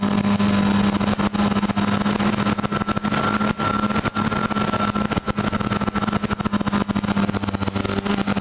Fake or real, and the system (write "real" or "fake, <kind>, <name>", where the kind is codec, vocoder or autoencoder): real